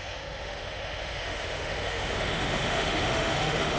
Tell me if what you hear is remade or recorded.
remade